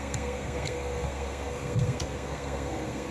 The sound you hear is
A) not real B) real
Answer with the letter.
A